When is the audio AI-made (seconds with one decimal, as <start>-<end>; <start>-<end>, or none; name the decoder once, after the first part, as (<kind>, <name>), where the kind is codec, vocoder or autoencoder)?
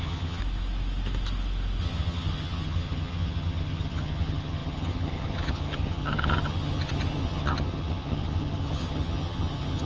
0.0-0.4 (vocoder, HiFi-GAN); 1.8-9.9